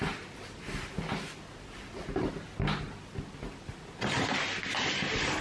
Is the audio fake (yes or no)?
no